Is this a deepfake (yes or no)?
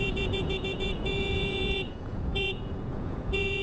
yes